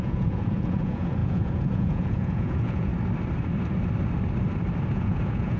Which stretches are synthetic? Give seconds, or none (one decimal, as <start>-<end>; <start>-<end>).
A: 0.0-2.9; 4.9-5.6